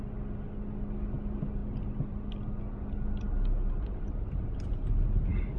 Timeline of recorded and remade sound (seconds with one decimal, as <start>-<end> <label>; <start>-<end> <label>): 0.0-5.6 recorded

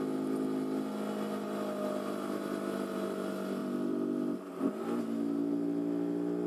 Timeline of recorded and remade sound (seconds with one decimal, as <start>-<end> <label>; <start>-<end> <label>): 0.0-3.6 recorded; 3.6-4.6 remade; 4.6-6.5 recorded